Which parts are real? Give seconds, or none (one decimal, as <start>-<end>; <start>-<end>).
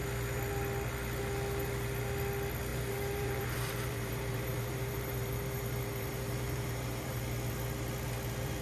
0.0-2.7; 7.2-8.6